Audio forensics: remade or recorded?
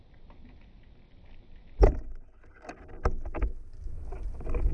recorded